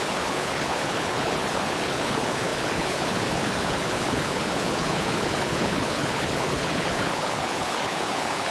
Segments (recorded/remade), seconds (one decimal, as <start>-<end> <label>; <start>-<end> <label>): 0.0-8.5 remade